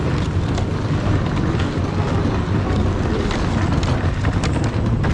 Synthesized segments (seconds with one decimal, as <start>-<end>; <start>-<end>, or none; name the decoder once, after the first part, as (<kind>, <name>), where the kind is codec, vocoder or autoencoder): none